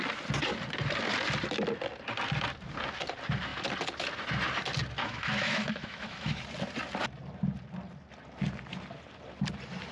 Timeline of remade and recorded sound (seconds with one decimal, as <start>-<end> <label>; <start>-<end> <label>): 0.0-5.0 recorded; 5.0-6.4 remade; 6.4-9.9 recorded